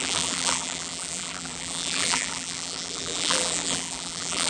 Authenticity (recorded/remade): remade